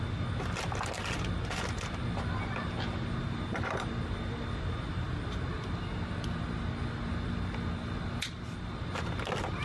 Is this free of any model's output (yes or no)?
yes